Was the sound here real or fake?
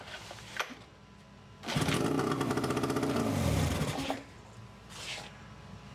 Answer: real